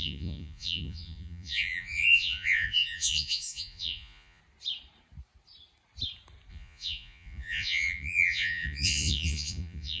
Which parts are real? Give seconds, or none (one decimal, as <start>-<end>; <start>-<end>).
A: 4.4-6.5